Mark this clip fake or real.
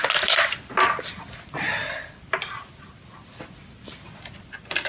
real